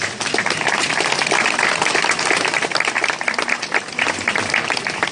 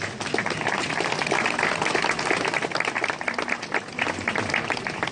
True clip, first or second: second